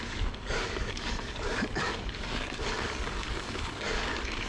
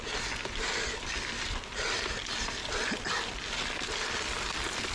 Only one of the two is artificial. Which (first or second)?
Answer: first